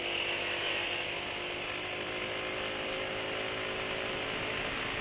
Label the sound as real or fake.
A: real